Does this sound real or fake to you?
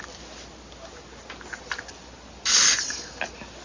real